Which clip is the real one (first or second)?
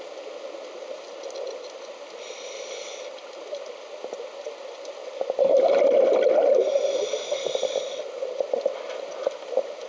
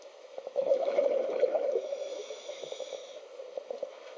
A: first